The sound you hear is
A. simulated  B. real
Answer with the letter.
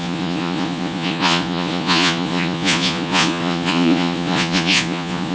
A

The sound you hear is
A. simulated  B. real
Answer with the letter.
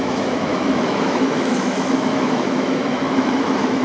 A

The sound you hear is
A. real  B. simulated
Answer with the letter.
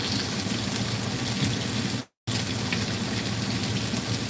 A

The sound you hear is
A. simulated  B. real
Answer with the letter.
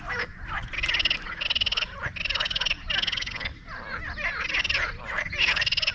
B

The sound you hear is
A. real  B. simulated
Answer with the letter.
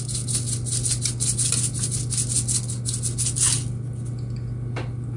A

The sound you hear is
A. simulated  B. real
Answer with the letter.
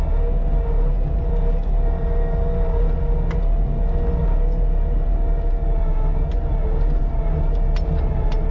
B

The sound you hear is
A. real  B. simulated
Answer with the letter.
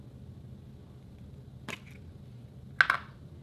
A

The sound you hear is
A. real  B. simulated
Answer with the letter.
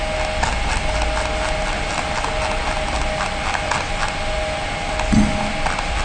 A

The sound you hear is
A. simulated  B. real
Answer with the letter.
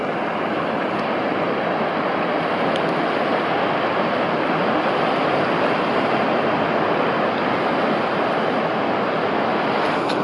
B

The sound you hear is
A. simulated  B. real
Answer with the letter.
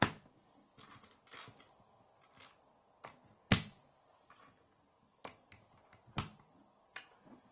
B